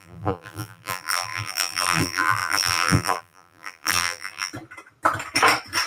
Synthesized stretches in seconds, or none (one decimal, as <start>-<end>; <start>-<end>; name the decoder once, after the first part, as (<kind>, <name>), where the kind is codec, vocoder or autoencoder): 0.0-4.5 (vocoder, BigVGAN v2)

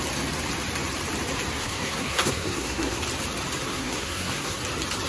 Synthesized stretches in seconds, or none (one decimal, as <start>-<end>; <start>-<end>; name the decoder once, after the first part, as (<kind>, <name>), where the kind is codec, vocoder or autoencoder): 1.6-3.0 (codec, SNAC); 3.7-4.6

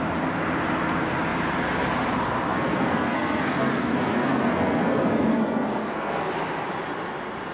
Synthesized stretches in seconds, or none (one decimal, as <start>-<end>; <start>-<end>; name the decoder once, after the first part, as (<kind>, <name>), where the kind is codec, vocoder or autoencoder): 2.5-6.3 (codec, SNAC)

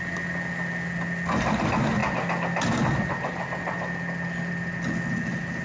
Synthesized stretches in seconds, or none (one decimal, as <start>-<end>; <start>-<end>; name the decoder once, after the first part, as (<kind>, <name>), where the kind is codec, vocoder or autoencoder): none

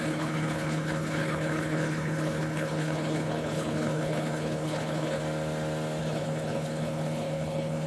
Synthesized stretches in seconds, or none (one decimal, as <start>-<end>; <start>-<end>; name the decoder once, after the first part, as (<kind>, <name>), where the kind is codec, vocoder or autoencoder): 0.0-5.2 (codec, HILCodec); 6.0-7.9

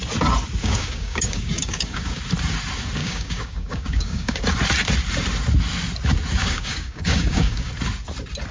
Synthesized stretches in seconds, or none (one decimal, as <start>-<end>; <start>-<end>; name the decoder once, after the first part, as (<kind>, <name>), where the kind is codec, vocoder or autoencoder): 0.6-2.2 (codec, DAC); 3.0-4.4; 6.4-7.7

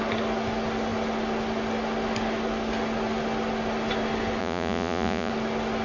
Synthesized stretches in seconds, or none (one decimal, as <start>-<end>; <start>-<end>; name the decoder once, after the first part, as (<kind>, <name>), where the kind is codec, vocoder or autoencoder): 4.4-5.3 (vocoder, Vocos)

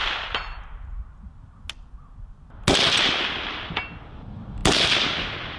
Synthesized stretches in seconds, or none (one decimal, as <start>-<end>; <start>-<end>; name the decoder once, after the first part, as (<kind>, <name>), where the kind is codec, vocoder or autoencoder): none